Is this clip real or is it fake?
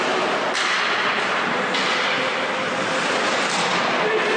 real